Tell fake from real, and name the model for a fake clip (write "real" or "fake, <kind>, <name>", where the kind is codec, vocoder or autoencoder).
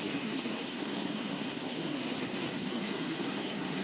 fake, codec, SNAC